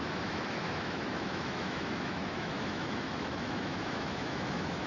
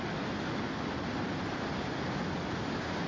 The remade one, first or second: first